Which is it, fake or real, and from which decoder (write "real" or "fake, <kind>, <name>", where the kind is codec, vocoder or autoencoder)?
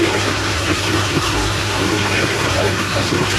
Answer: fake, codec, SNAC